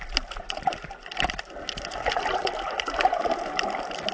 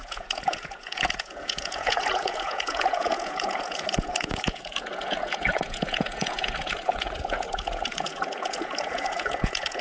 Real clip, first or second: first